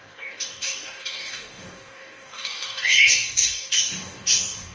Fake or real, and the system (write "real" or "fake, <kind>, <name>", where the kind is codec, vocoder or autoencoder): fake, codec, DAC